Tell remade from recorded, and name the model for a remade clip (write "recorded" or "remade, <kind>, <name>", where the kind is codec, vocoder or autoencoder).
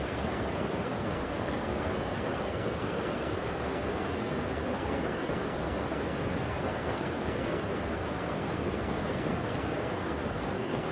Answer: remade, codec, SNAC